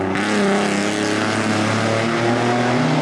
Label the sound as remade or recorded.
recorded